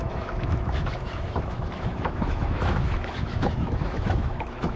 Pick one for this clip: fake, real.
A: fake